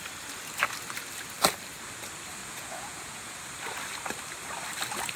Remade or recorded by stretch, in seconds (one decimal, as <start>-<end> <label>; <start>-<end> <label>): 0.0-2.4 recorded; 2.4-3.4 remade; 3.4-5.2 recorded